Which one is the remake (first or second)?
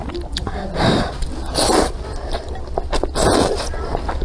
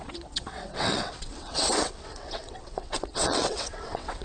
second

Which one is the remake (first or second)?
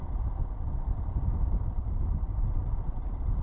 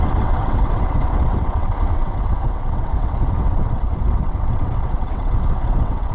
second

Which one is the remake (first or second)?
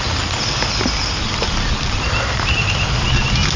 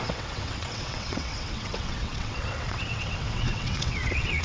second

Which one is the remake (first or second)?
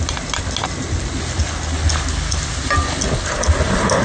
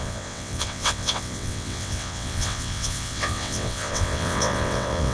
second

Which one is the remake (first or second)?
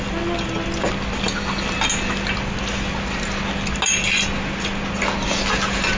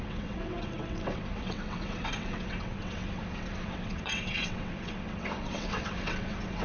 second